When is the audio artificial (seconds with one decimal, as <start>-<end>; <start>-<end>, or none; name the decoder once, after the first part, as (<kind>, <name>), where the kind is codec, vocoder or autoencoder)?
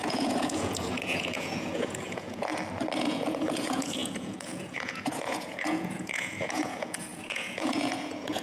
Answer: 0.0-2.5 (vocoder, Vocos); 3.0-8.4